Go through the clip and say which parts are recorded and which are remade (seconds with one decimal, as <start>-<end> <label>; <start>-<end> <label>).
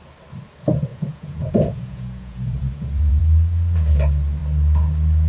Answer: 0.0-0.9 recorded; 0.9-3.2 remade; 3.2-5.3 recorded